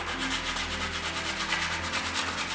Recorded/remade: recorded